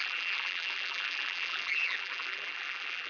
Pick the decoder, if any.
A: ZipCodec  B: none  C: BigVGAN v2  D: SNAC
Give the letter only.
C